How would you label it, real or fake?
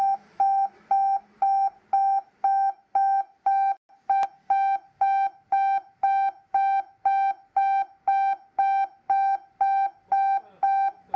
real